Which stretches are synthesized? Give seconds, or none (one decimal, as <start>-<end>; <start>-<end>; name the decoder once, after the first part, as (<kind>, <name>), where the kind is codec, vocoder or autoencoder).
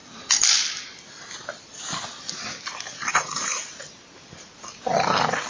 3.1-3.7 (vocoder, Vocos)